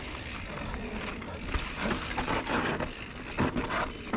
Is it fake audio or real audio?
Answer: real